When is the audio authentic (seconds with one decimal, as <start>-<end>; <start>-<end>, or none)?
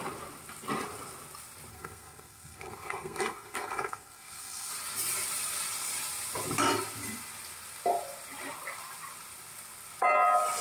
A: 0.0-1.7; 4.7-10.6